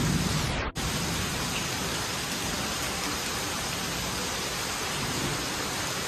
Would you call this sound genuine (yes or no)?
yes